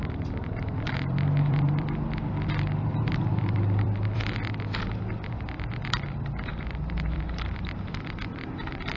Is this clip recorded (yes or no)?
no